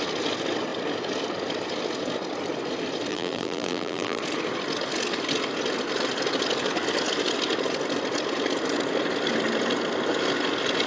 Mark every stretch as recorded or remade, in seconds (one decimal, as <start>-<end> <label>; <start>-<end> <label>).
0.0-3.1 recorded; 3.1-4.2 remade; 4.2-10.9 recorded